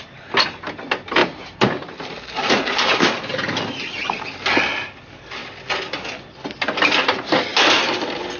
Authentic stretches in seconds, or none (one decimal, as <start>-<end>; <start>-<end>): 0.0-1.2; 3.1-8.4